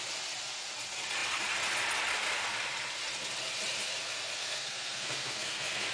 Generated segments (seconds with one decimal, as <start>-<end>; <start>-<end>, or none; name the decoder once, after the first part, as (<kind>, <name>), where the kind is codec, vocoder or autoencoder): 4.4-5.9 (codec, SNAC)